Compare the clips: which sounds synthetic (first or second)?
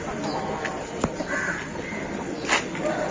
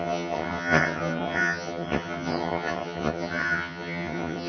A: second